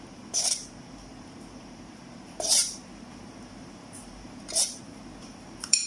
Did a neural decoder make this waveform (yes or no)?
yes